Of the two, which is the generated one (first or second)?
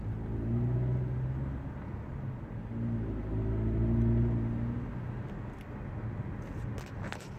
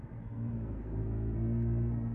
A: second